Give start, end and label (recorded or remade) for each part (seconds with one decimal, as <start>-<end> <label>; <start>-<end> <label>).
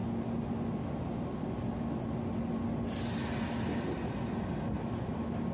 0.0-5.5 recorded